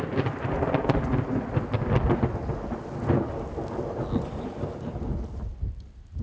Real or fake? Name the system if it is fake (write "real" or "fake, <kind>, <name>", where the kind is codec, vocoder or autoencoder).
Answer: real